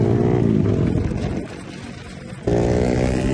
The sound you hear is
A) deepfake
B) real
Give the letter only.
B